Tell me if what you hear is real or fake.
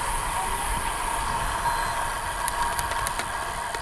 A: real